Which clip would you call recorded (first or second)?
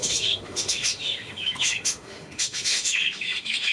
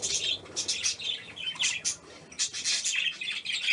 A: second